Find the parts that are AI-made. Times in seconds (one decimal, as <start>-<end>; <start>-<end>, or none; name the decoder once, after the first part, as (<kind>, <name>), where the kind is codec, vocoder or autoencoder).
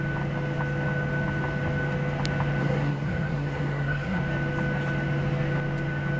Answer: 2.6-4.2 (codec, SNAC)